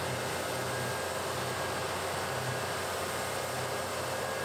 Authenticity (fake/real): real